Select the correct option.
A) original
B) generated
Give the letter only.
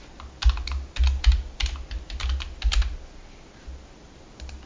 A